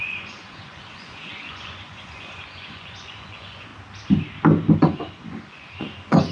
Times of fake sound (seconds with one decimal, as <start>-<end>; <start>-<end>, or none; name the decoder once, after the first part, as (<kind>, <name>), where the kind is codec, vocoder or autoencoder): 0.0-3.7 (vocoder, Vocos); 4.8-6.3